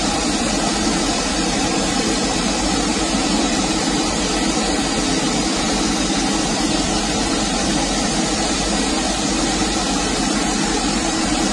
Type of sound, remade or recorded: remade